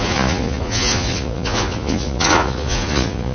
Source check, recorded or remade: remade